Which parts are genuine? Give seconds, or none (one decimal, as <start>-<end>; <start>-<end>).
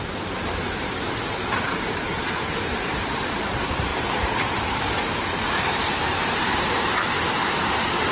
2.1-2.7; 3.9-5.5